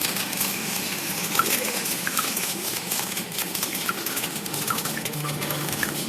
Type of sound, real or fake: fake